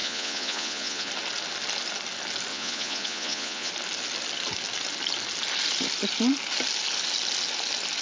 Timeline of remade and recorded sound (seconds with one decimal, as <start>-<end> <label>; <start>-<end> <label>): 0.0-1.1 remade; 1.1-2.5 recorded; 2.5-3.7 remade; 3.7-8.0 recorded